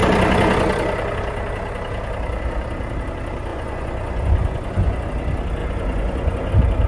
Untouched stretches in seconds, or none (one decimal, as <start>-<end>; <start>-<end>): 0.0-3.5; 5.1-5.6; 6.5-6.9